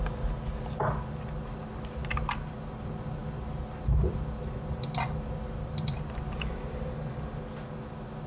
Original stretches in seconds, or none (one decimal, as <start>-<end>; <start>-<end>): 0.0-8.3